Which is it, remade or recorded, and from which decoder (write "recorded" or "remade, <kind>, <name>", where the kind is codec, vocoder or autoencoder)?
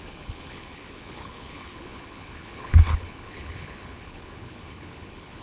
remade, codec, HILCodec